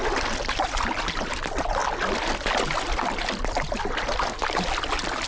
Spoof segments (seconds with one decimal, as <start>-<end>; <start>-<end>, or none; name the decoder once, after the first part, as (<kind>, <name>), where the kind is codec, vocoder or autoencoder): none